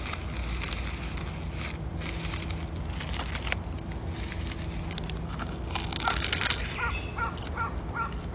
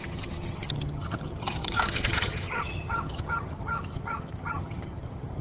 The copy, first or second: second